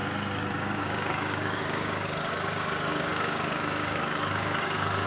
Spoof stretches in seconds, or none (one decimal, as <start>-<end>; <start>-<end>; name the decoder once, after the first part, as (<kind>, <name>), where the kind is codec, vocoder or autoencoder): 0.5-5.1 (codec, DAC)